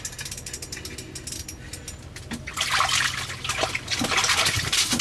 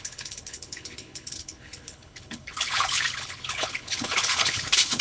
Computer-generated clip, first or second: second